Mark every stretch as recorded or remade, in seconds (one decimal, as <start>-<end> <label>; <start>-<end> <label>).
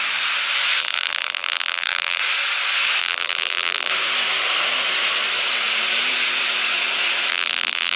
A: 0.0-0.8 recorded; 0.8-2.2 remade; 2.2-3.0 recorded; 3.0-3.9 remade; 3.9-7.3 recorded; 7.3-8.0 remade